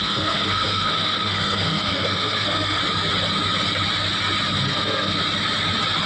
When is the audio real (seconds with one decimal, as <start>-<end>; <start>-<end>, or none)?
2.8-4.7; 5.2-6.1